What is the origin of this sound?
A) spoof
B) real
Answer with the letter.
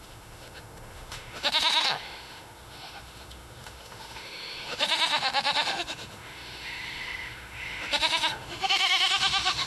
A